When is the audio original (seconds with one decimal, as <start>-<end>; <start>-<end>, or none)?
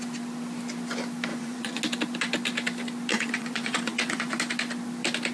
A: 0.0-1.3; 1.8-3.1; 4.4-5.3